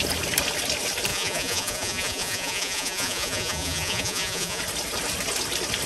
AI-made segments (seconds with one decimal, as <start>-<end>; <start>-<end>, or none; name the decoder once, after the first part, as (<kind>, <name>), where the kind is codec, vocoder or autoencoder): 1.1-4.6 (vocoder, Vocos)